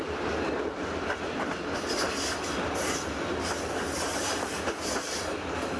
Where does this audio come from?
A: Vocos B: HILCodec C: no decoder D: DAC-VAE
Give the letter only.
C